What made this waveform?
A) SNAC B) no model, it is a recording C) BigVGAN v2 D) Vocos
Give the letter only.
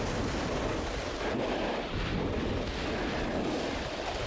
B